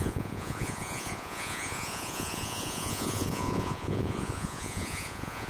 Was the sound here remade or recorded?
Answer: remade